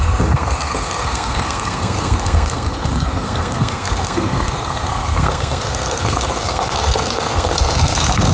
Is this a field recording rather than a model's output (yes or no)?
no